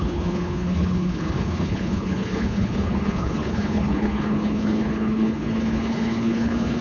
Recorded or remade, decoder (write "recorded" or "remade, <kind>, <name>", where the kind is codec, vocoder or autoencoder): remade, codec, HILCodec